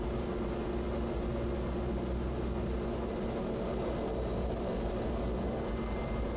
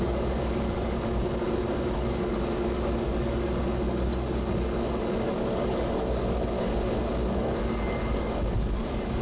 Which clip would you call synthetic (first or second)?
second